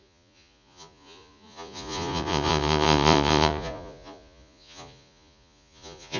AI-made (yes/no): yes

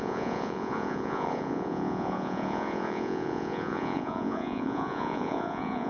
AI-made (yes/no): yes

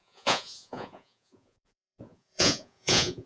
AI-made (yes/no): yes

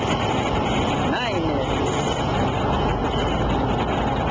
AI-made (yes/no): no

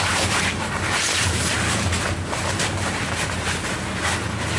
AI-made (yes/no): no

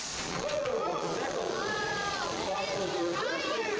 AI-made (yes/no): yes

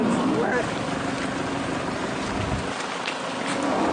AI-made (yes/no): no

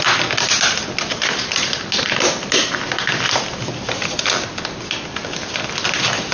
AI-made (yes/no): no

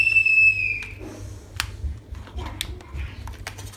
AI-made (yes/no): no